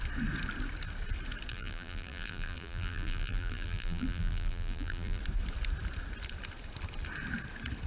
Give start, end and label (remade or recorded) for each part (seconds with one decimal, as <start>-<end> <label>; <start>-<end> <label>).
0.0-1.5 recorded; 1.5-5.2 remade; 5.2-7.9 recorded